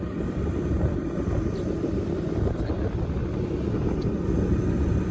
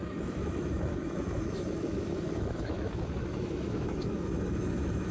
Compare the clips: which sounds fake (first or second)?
second